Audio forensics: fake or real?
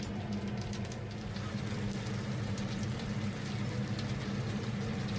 real